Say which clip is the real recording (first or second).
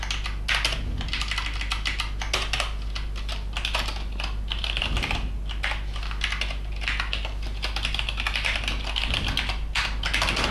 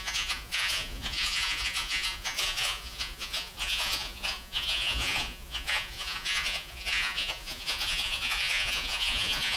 first